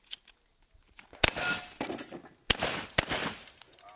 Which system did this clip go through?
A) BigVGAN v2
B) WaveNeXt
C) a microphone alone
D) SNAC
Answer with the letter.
C